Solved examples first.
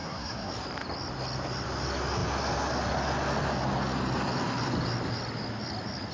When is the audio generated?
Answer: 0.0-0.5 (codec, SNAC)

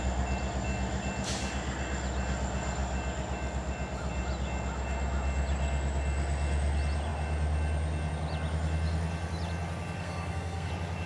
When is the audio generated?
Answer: 10.0-10.7 (codec, SNAC)

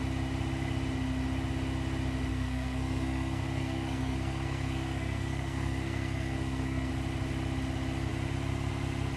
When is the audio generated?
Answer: 2.3-6.9 (codec, SNAC)

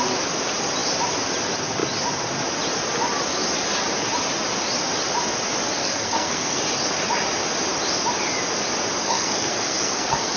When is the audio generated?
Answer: 5.8-6.6 (codec, SNAC); 9.0-10.4

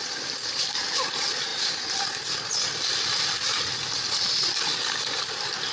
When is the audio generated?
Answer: none

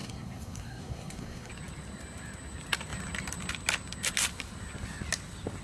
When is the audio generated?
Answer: 0.0-1.5 (codec, SNAC)

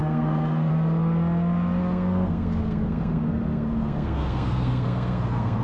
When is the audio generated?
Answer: 0.0-0.7 (codec, SNAC); 1.8-5.6

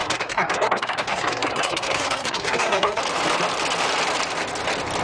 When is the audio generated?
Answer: 0.0-3.0 (codec, SNAC)